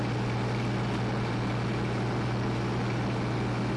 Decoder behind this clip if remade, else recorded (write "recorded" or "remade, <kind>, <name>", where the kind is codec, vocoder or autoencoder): recorded